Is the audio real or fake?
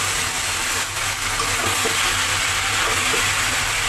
real